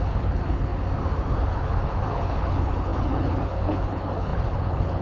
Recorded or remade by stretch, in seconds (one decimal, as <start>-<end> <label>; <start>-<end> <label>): 0.0-0.7 remade; 0.7-1.4 recorded; 1.4-5.0 remade